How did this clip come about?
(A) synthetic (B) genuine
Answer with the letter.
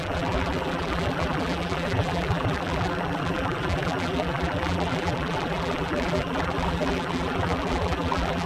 A